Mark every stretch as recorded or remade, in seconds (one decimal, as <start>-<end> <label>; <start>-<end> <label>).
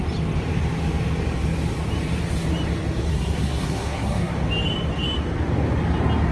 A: 0.0-3.1 recorded; 3.1-4.3 remade; 4.3-6.3 recorded